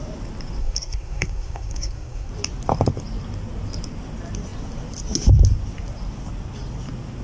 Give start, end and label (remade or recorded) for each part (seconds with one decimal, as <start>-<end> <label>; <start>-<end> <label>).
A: 0.0-0.6 recorded; 0.6-2.3 remade; 2.3-7.2 recorded